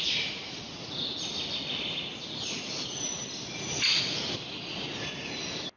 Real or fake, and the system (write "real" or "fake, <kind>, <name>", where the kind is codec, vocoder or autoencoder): real